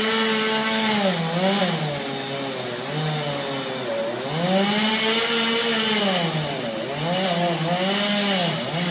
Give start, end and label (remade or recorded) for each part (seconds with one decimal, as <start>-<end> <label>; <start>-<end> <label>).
0.0-8.9 recorded